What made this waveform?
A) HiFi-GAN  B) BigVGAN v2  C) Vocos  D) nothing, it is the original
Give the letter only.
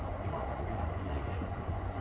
C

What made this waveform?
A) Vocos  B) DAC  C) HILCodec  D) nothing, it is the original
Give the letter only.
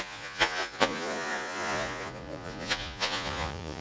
A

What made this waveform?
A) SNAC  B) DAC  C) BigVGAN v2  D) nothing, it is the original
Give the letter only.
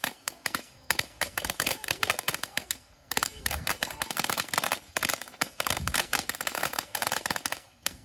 A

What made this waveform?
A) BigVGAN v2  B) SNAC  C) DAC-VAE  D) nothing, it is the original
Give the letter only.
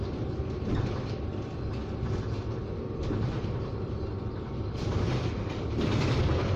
D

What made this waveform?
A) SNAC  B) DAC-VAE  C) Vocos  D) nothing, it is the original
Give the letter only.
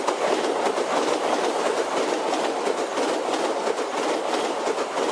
D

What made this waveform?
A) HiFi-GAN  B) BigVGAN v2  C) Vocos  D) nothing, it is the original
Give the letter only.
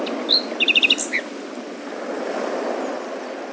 D